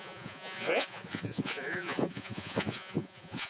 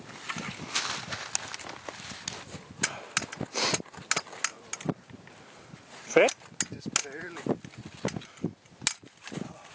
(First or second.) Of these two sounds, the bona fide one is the second